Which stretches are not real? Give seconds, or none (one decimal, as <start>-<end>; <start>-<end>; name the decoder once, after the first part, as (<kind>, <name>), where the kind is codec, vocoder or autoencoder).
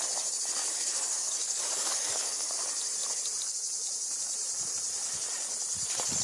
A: 0.6-2.5 (codec, DAC)